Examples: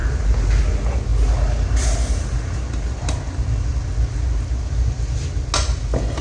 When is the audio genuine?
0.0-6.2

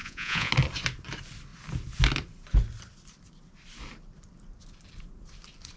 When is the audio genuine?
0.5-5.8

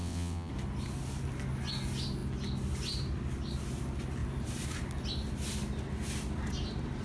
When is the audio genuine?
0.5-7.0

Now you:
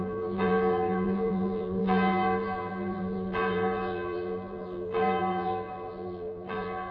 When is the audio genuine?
none